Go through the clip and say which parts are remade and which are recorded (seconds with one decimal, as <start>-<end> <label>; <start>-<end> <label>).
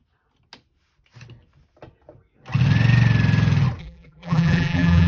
0.0-3.8 recorded; 3.8-5.1 remade